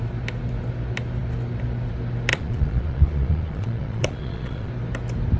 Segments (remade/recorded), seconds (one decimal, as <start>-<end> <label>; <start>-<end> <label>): 0.0-2.3 recorded; 2.3-4.7 remade; 4.7-5.4 recorded